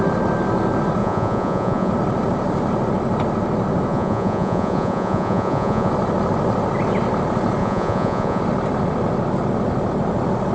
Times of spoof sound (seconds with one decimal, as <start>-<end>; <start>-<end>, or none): 1.0-1.9; 3.9-5.9; 7.6-8.4

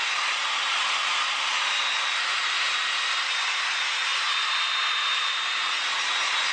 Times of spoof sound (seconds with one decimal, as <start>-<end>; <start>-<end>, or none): none

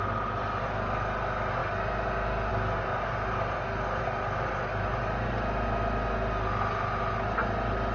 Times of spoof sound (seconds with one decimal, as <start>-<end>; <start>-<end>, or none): none

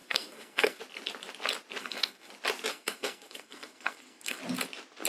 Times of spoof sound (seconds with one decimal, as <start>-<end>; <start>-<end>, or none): 0.0-0.8; 1.8-2.3; 2.7-4.4

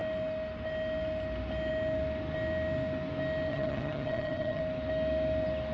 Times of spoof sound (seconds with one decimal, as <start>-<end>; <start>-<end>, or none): 3.5-4.6